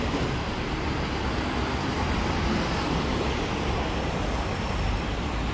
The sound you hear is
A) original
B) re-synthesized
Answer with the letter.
B